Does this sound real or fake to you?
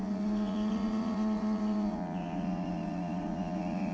fake